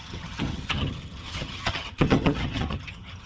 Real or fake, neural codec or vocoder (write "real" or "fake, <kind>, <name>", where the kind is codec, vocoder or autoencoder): fake, vocoder, HiFi-GAN